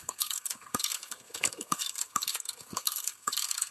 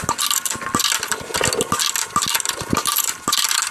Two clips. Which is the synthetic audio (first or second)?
first